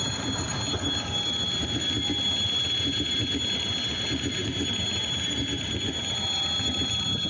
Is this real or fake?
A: fake